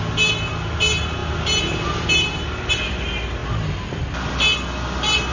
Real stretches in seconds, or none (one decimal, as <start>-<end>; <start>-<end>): 0.0-5.3